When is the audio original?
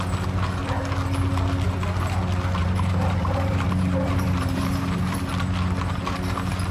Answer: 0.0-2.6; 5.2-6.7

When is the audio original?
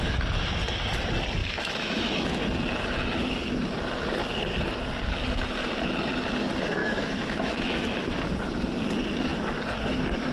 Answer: 0.0-1.4; 2.4-6.8; 8.1-10.3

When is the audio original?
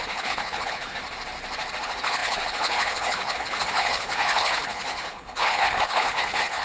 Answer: 1.0-1.8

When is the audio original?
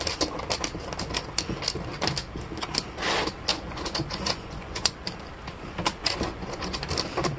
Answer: 0.0-3.5; 5.0-6.0; 6.9-7.4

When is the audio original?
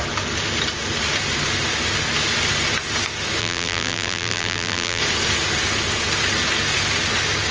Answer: 0.0-3.4; 5.0-7.5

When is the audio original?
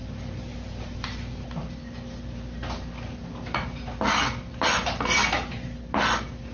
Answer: 0.0-6.5